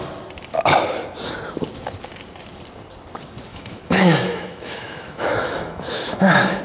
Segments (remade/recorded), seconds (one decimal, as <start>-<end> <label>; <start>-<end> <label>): 0.0-3.5 recorded; 3.5-6.6 remade